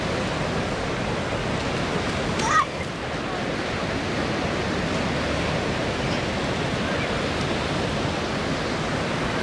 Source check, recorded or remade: recorded